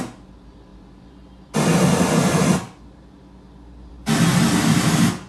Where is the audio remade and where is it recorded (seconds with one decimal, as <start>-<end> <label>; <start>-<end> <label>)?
0.0-5.3 recorded